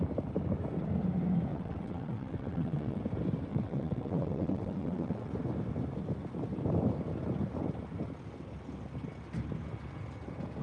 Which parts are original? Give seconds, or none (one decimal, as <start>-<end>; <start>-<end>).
0.0-1.5; 3.0-3.5; 5.3-10.6